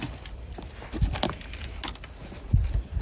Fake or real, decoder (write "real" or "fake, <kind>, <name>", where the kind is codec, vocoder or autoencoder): real